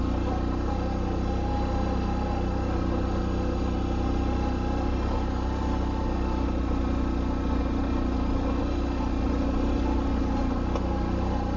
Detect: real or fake real